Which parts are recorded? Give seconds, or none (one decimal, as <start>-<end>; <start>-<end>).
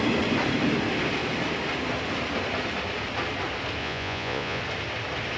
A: 0.0-3.8; 4.6-5.4